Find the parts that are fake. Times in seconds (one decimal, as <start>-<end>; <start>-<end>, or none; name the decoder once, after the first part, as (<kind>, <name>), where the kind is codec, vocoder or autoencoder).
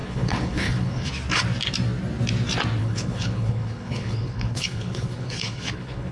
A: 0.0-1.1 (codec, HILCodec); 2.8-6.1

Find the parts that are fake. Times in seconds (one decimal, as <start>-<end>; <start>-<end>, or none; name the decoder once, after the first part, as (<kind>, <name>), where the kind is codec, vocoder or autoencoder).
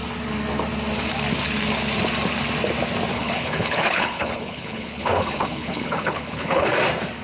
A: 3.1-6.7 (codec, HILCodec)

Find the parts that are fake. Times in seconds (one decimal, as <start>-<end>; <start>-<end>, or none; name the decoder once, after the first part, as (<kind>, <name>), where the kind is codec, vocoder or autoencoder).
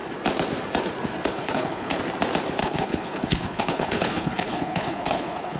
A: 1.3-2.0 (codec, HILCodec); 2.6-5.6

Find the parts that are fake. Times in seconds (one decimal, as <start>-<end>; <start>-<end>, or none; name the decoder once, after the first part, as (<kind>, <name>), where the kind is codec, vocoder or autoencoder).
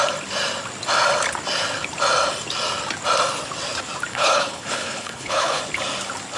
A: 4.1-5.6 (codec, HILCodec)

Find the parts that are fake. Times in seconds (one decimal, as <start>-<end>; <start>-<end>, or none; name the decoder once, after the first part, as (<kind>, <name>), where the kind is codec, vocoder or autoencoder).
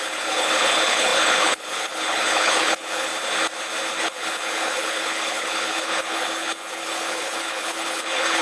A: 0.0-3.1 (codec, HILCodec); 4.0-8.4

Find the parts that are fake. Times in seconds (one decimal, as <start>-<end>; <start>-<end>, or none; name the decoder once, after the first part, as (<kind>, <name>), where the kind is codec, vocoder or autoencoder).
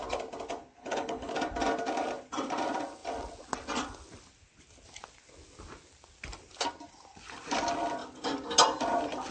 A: 0.8-1.3 (codec, HILCodec)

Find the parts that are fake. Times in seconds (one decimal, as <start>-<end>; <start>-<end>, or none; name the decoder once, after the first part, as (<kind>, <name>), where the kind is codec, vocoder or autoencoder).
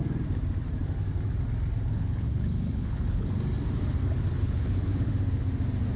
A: 1.9-3.3 (codec, HILCodec); 4.4-5.1